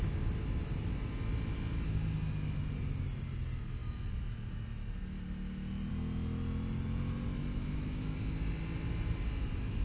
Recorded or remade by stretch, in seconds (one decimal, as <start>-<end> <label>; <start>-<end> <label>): 0.0-9.8 recorded